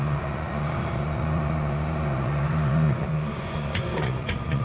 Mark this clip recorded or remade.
remade